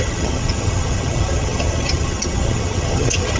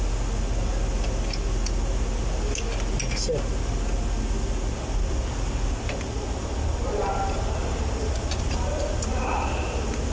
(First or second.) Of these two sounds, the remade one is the first